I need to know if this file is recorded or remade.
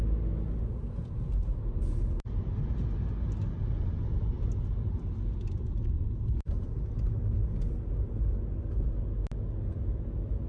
recorded